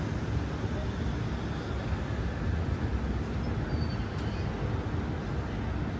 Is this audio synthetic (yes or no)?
no